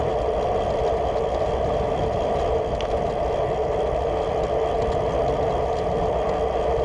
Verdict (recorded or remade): recorded